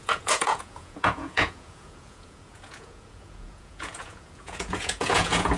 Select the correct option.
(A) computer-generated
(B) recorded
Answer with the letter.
A